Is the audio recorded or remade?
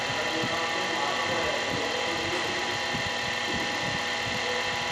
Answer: recorded